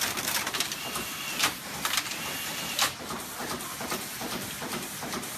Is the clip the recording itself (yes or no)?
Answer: no